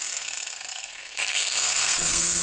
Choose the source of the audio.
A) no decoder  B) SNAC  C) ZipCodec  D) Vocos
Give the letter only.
B